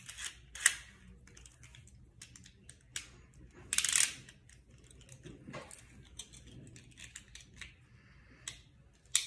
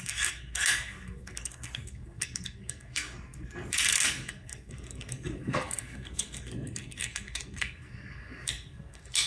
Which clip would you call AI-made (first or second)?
second